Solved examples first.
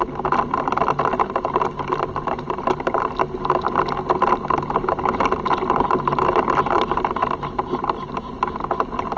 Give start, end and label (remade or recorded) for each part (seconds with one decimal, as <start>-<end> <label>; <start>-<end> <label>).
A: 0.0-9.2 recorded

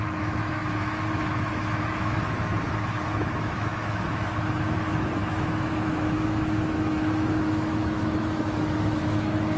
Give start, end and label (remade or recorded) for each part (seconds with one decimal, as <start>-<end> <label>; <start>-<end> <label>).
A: 0.0-9.6 remade

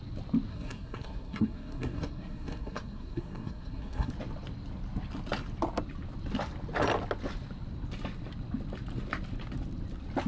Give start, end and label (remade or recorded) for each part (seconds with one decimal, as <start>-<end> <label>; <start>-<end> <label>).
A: 0.0-0.5 recorded; 0.5-4.1 remade; 4.1-10.3 recorded

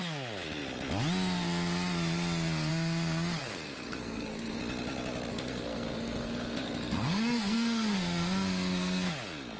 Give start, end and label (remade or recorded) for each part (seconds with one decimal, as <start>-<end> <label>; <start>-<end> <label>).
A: 0.0-3.4 recorded; 3.4-4.6 remade; 4.6-5.3 recorded; 5.3-9.1 remade; 9.1-9.6 recorded

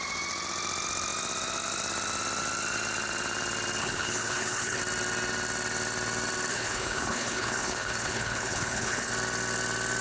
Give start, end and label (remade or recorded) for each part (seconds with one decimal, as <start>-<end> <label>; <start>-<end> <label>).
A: 0.0-3.8 recorded; 3.8-4.8 remade; 4.8-6.5 recorded; 6.5-9.1 remade; 9.1-10.0 recorded